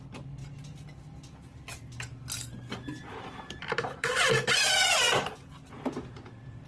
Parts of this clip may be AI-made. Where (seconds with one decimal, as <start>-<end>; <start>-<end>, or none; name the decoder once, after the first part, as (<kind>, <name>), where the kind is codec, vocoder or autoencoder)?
none